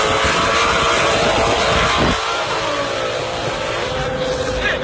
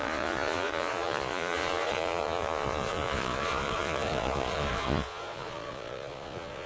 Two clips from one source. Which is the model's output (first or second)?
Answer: second